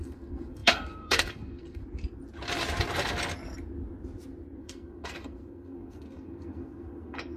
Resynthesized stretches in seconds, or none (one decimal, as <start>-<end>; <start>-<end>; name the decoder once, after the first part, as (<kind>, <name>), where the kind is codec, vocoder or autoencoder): 0.0-1.8 (codec, SNAC); 4.6-7.4